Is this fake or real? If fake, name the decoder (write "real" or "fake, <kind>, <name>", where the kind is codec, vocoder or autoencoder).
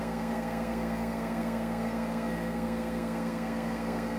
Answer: fake, codec, SNAC